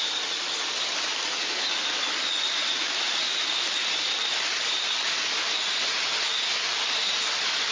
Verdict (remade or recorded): recorded